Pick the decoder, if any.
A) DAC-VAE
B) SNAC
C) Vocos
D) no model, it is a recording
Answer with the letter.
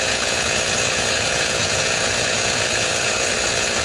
C